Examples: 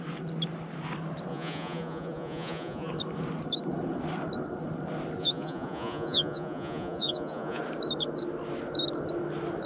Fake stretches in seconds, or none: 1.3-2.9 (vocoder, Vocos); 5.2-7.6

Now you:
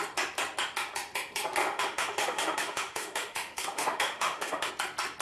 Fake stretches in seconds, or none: 1.6-4.7 (autoencoder, DAC-VAE)

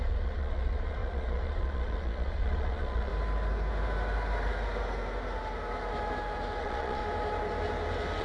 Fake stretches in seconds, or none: 0.0-3.1 (vocoder, Vocos); 6.6-7.0

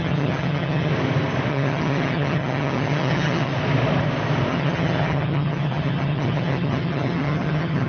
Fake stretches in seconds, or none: 0.0-0.9 (vocoder, HiFi-GAN); 1.5-3.5; 4.5-7.9